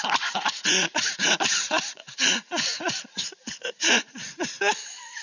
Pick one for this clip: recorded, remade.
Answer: remade